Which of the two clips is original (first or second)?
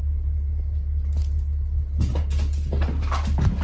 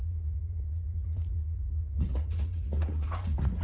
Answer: first